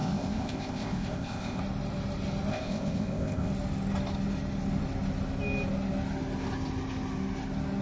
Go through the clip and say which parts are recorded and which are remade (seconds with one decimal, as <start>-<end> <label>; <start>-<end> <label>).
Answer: 0.0-1.6 remade; 1.6-2.5 recorded; 2.5-3.5 remade; 3.5-7.8 recorded